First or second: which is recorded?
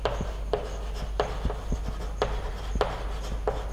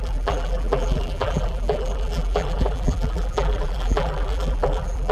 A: first